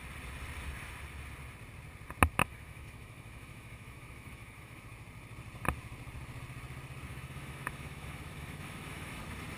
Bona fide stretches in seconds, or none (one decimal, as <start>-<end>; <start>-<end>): 0.0-2.4; 4.8-7.1; 9.2-9.6